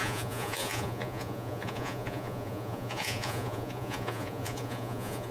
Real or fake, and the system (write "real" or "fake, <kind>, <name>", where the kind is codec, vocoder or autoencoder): fake, vocoder, Vocos